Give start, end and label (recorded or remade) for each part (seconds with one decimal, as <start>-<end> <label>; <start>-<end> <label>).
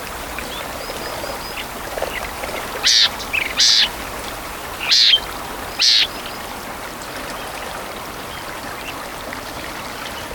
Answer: 0.0-9.1 recorded; 9.1-10.3 remade